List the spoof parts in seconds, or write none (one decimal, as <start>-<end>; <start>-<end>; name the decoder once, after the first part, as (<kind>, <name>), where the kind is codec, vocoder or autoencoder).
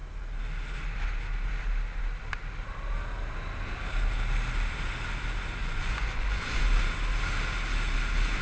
5.6-6.6 (vocoder, Vocos)